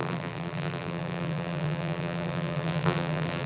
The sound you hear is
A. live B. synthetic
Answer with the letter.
B